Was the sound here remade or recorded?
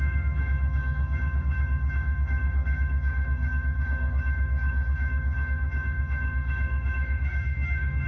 remade